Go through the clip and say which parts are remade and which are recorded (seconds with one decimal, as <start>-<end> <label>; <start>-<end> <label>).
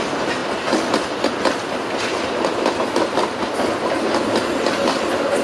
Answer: 0.0-5.4 recorded